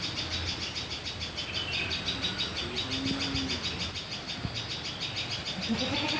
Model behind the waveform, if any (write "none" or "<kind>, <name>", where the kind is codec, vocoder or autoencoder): none